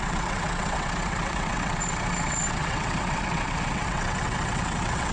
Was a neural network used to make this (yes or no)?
yes